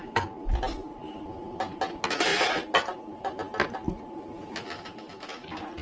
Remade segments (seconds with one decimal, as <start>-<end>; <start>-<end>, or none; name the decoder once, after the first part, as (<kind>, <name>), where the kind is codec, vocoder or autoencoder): none

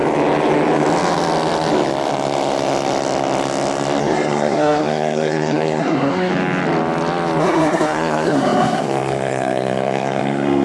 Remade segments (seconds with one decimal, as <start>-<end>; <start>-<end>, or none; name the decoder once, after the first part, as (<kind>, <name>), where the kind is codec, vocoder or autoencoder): 4.0-6.3 (codec, SNAC); 7.4-10.6

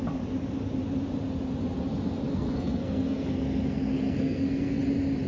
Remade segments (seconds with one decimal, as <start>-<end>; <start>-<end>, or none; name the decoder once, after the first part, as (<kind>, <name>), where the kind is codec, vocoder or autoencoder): 2.3-4.8 (codec, SNAC)

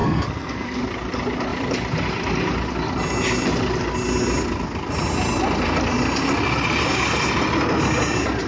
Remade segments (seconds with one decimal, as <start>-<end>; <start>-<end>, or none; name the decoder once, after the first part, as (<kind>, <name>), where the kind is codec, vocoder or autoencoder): 0.0-0.8 (codec, SNAC)

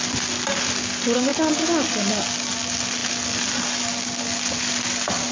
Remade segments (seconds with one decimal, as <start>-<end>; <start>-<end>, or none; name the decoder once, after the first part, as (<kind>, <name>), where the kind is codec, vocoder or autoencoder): none

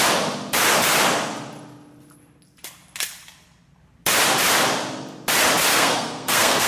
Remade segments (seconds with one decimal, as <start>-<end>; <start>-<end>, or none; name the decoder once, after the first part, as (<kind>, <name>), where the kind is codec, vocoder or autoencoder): 5.7-6.7 (codec, SNAC)

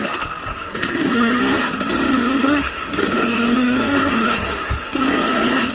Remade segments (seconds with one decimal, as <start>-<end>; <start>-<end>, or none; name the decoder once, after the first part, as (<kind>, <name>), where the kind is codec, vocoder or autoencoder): 0.5-1.4 (codec, SNAC); 2.1-5.7

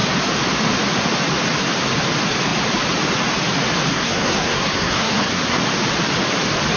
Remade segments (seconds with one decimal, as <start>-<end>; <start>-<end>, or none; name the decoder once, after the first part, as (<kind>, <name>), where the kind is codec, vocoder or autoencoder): 3.9-5.6 (codec, SNAC)